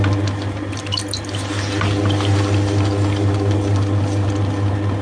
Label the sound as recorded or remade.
recorded